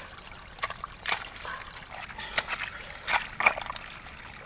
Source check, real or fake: real